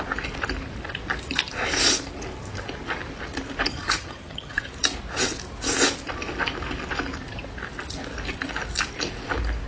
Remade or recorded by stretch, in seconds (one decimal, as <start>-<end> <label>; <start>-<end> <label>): 0.0-3.7 recorded; 3.7-4.7 remade; 4.7-9.7 recorded